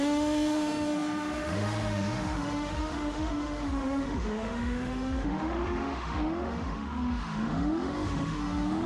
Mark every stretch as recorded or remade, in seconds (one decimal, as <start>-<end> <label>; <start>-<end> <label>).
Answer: 0.0-8.9 remade

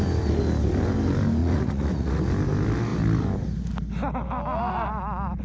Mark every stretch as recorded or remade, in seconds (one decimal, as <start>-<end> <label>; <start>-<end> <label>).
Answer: 0.0-1.4 recorded; 1.4-2.2 remade; 2.2-5.4 recorded